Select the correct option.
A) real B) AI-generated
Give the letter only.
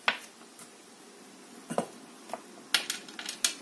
A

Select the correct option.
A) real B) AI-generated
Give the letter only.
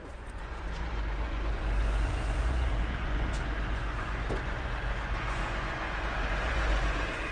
B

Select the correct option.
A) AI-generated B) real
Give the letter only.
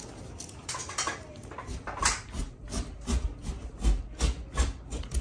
B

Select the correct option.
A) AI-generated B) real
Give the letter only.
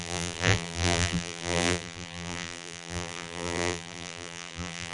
A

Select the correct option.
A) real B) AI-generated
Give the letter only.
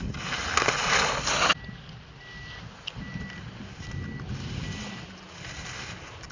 A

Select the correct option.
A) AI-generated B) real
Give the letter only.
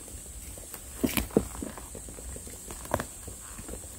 B